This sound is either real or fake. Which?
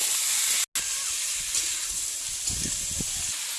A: real